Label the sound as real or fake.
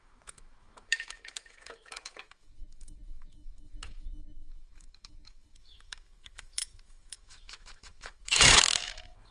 fake